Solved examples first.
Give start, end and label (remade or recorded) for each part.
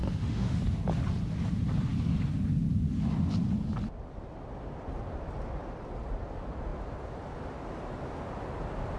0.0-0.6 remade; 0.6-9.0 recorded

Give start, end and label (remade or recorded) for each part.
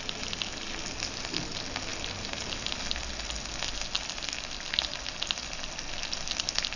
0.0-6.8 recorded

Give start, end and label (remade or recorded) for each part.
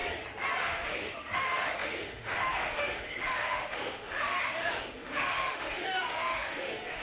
0.0-0.6 recorded; 0.6-7.0 remade